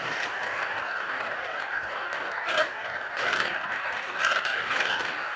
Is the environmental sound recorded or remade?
remade